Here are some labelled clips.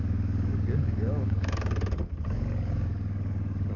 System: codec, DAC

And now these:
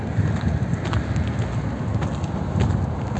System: none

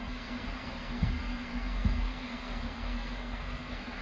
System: codec, SNAC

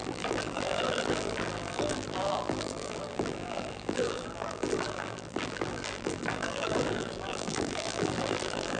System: vocoder, BigVGAN v2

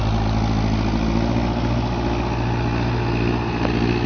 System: none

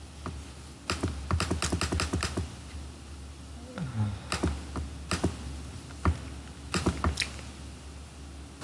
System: none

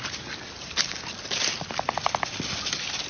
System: none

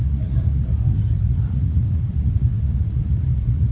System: vocoder, Vocos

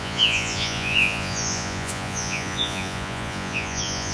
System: vocoder, Vocos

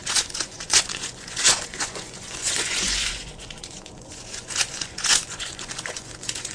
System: vocoder, Vocos